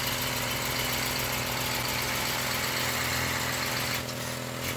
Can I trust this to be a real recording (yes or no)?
yes